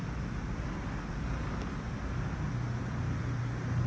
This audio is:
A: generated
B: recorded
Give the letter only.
B